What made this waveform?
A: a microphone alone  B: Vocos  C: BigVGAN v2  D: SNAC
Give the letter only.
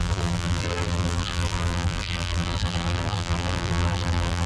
C